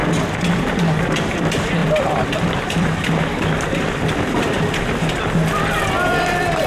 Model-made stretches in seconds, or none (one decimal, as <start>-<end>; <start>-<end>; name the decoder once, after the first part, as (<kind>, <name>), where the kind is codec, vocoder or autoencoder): 1.8-4.6 (vocoder, BigVGAN v2)